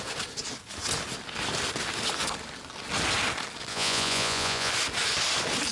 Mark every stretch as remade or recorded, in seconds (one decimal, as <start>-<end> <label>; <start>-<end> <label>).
0.0-3.7 recorded; 3.7-4.7 remade; 4.7-5.7 recorded